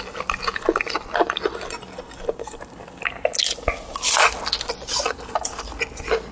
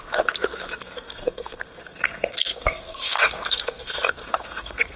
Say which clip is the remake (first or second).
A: second